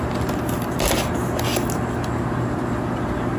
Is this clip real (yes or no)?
yes